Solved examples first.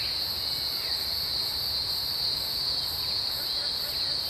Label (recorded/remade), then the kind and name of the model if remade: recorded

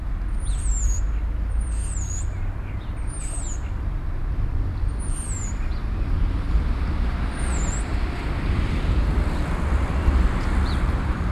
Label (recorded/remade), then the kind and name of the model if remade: remade, vocoder, BigVGAN v2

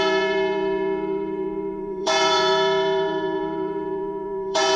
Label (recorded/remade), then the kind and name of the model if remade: remade, vocoder, BigVGAN v2